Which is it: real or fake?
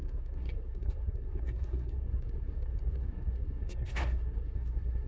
fake